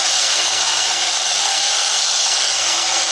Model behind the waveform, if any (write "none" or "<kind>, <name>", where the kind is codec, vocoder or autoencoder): codec, SNAC